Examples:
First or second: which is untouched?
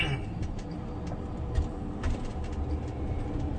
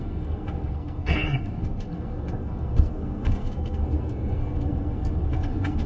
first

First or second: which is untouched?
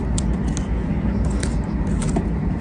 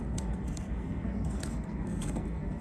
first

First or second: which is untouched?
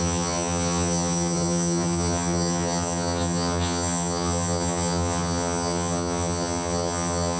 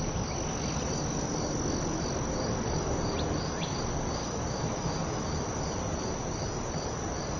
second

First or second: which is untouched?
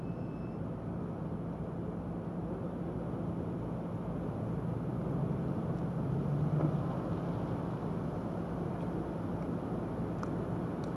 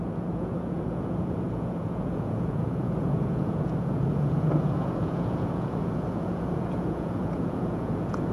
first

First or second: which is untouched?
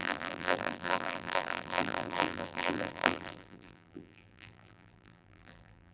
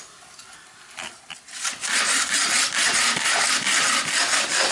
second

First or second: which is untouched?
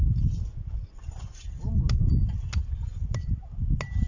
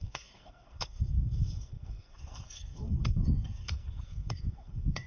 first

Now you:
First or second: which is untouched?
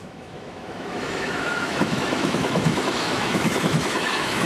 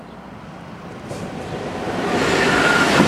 second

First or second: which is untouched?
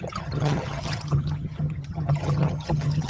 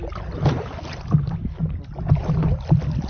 second